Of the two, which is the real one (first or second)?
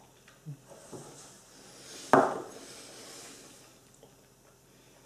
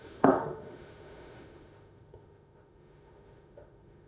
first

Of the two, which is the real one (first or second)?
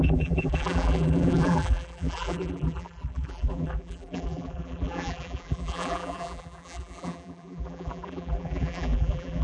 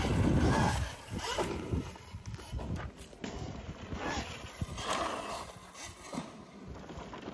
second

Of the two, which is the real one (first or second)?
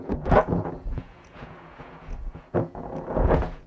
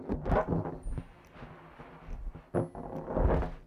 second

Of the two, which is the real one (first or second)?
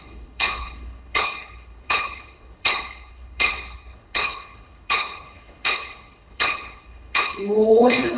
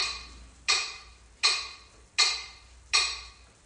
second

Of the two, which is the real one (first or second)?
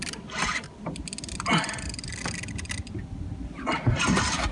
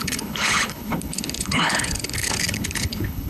first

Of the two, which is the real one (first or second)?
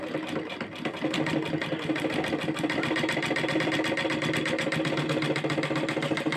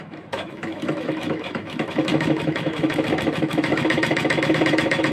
first